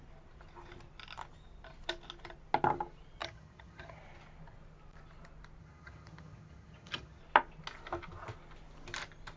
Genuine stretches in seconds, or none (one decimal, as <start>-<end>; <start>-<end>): 0.0-3.2; 4.0-5.6; 7.2-9.4